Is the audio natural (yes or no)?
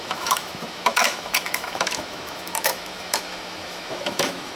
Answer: no